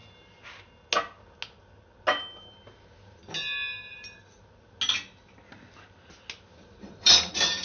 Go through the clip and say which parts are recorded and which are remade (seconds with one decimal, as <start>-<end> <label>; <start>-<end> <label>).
0.0-6.5 recorded; 6.5-7.1 remade; 7.1-7.6 recorded